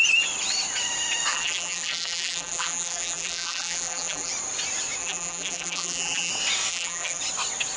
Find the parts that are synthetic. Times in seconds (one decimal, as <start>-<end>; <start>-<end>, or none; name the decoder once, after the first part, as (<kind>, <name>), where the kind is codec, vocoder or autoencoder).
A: 1.3-4.3 (vocoder, BigVGAN v2); 5.0-6.3; 6.7-7.2